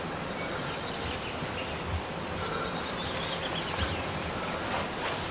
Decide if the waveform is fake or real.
real